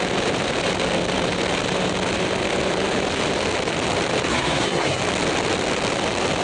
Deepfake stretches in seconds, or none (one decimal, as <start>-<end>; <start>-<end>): 4.3-5.0